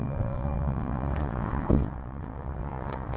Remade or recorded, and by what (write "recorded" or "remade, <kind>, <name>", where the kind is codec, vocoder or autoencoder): remade, vocoder, WaveNeXt